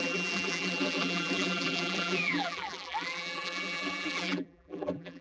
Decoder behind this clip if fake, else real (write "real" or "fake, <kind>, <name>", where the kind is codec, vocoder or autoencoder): fake, vocoder, BigVGAN v2